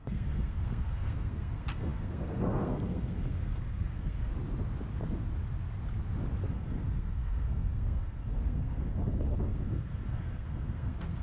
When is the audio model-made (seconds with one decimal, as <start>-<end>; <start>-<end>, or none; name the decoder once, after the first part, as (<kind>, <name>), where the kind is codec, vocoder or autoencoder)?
0.0-4.3 (codec, SNAC); 6.5-11.2